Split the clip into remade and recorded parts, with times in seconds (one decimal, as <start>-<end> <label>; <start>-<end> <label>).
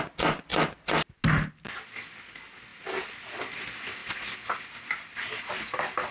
0.0-6.1 recorded